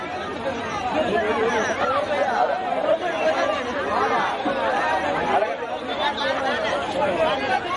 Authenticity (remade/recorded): recorded